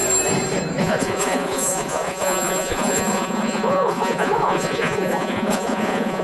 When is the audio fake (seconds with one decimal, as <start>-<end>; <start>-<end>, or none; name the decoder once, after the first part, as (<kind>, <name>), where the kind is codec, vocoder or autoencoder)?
0.8-6.2 (vocoder, Vocos)

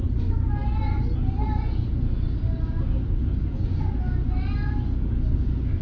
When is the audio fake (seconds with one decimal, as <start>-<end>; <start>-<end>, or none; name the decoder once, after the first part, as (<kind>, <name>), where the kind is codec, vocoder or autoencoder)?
none

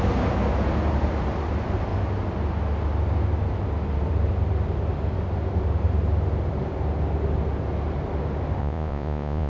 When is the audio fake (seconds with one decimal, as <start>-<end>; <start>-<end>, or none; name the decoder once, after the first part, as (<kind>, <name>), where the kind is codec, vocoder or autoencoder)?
8.6-9.5 (vocoder, Vocos)